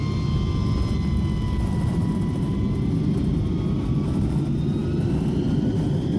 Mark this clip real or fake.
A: real